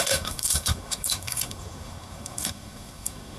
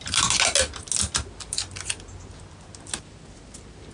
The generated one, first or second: first